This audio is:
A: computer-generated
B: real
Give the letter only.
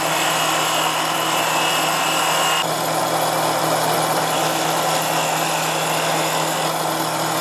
B